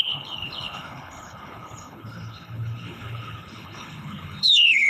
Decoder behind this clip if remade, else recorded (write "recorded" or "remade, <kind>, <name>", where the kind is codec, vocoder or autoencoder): remade, codec, HILCodec